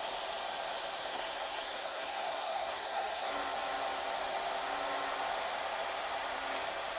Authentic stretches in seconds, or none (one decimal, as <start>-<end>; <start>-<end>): 0.0-1.1; 3.3-7.0